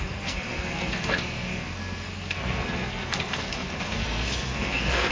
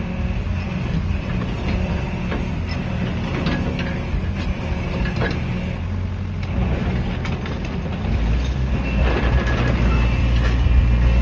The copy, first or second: first